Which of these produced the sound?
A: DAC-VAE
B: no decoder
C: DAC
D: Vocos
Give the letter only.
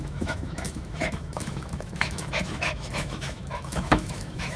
A